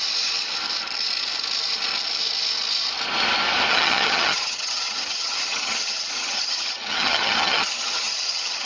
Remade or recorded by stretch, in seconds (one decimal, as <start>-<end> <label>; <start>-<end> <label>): 0.0-3.7 recorded; 3.7-8.7 remade